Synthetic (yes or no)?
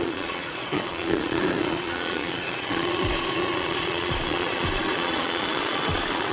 yes